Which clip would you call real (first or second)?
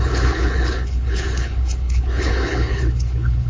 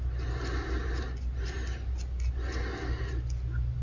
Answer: second